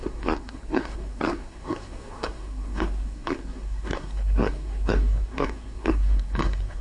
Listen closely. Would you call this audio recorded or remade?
remade